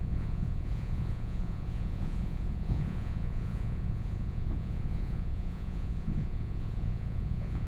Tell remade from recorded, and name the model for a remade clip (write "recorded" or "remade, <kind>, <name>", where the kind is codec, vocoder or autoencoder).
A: remade, vocoder, Vocos